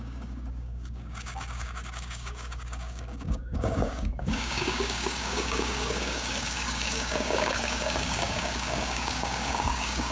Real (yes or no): no